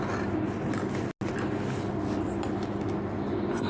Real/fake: real